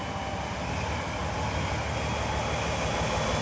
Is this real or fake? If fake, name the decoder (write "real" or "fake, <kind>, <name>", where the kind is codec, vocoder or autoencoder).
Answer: real